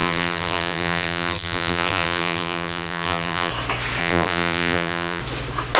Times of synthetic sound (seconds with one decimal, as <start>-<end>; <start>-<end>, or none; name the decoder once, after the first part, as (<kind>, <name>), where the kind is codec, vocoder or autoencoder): 0.0-3.5 (vocoder, BigVGAN v2); 4.0-5.2